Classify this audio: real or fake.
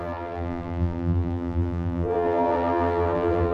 fake